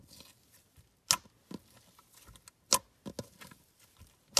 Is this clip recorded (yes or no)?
yes